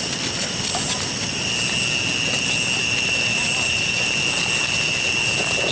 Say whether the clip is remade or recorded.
recorded